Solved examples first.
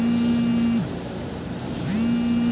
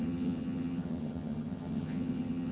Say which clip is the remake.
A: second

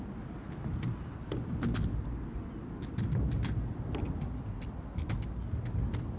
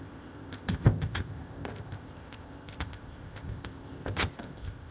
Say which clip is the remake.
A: second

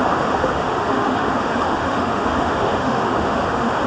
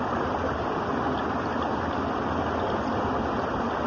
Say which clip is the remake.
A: first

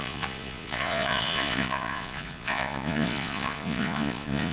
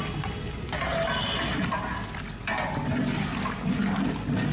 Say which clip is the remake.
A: first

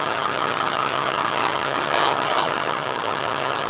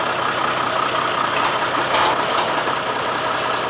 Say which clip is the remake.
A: first